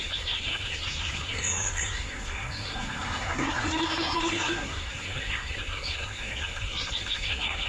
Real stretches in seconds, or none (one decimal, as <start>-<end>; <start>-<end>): none